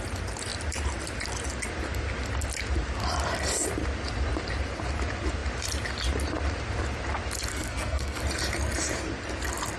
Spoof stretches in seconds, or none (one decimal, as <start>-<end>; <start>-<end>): 7.5-8.2